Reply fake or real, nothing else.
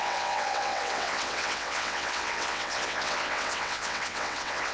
fake